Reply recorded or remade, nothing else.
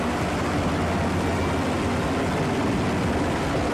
recorded